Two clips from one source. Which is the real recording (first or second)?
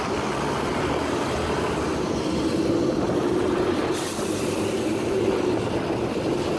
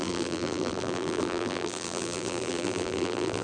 first